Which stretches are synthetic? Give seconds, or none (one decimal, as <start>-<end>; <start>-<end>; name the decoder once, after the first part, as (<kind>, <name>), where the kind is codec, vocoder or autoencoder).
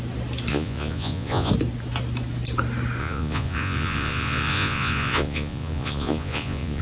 0.5-1.5 (vocoder, Vocos); 3.0-6.8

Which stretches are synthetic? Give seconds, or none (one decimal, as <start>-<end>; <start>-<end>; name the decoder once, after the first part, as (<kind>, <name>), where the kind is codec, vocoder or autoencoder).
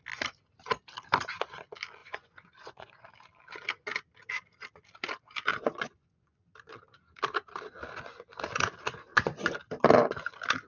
2.0-3.1 (vocoder, Vocos); 5.5-6.4; 9.1-9.6